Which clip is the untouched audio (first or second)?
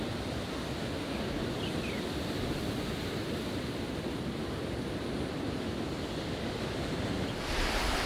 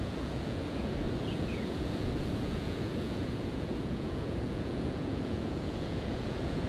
first